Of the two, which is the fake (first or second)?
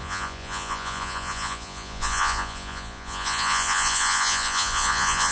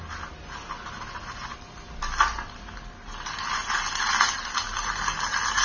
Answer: first